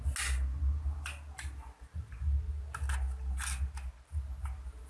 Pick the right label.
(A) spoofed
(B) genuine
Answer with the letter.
B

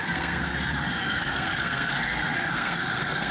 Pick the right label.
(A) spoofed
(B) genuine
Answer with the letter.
A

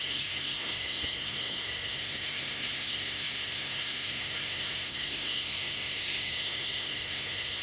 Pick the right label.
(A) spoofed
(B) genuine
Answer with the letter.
A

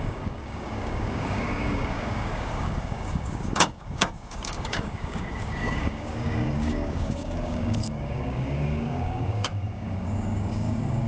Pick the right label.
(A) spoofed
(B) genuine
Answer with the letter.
A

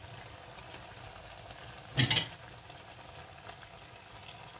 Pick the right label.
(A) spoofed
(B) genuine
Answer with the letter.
B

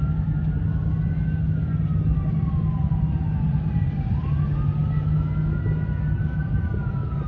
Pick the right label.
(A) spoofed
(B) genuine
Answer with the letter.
B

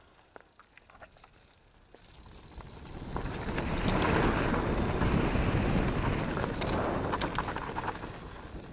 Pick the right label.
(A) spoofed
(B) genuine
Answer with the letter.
B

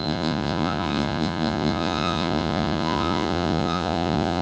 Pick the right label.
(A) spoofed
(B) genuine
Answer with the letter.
A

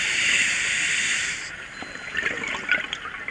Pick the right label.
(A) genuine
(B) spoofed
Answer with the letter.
A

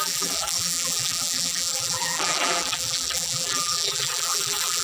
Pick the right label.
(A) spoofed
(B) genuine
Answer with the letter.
A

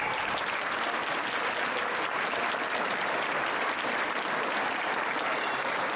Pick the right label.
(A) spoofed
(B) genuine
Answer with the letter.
B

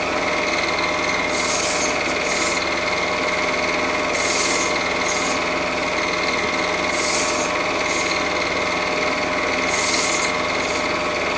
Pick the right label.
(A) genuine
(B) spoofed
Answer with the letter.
A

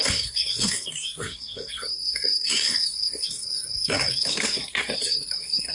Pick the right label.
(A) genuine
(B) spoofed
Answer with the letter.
B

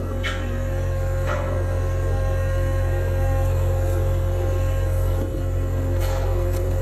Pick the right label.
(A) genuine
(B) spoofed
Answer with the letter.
B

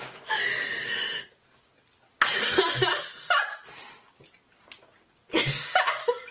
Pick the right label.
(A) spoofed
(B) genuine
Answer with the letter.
B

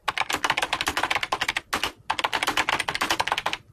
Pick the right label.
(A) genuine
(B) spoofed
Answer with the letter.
A